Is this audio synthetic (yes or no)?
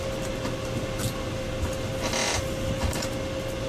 no